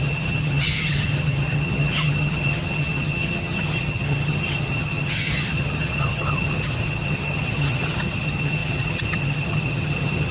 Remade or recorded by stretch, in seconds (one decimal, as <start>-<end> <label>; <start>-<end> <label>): 0.0-10.3 remade